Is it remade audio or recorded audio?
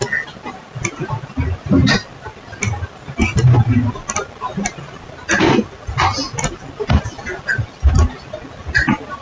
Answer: recorded